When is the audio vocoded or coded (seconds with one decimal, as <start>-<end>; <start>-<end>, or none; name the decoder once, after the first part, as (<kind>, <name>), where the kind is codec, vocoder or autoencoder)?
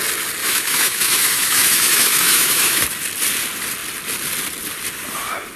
0.4-2.8 (autoencoder, DAC-VAE)